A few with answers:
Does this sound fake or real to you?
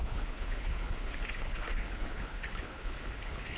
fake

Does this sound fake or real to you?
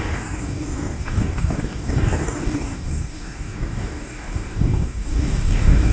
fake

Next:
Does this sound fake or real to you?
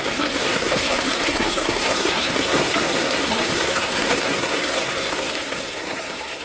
fake